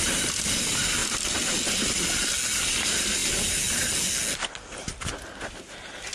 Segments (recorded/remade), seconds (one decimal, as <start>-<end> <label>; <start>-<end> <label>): 0.0-6.1 recorded